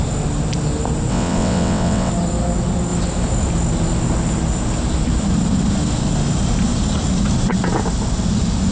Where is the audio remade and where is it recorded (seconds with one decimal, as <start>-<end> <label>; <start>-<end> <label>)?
0.0-1.1 recorded; 1.1-2.1 remade; 2.1-8.7 recorded